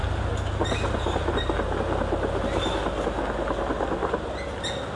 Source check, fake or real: real